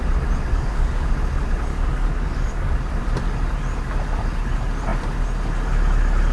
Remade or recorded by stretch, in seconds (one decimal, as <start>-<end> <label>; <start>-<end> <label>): 0.0-0.5 recorded; 0.5-1.1 remade; 1.1-1.7 recorded; 1.7-2.7 remade; 2.7-6.3 recorded